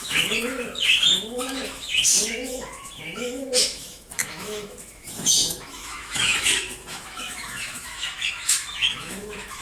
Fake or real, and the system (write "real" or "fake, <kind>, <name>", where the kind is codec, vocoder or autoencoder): fake, autoencoder, DAC-VAE